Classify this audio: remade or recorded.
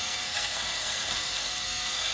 remade